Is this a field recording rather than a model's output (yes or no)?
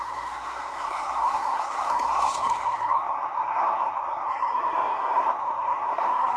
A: no